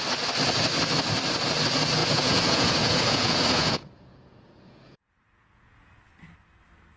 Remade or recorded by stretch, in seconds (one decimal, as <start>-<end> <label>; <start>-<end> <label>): 0.0-2.0 recorded; 2.0-6.0 remade; 6.0-7.0 recorded